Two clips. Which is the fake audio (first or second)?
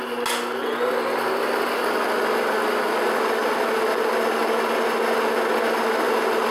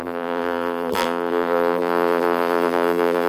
second